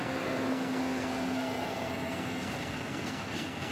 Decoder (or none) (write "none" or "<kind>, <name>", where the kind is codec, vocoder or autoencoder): codec, SNAC